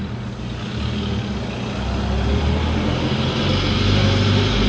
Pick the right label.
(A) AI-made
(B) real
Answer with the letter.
B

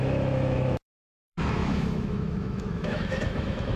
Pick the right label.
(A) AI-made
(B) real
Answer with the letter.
A